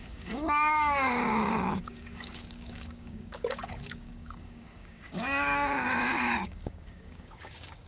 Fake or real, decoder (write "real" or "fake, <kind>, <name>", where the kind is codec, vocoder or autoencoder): fake, codec, DAC